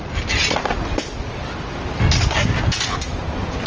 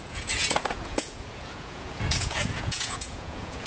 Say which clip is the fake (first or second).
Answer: second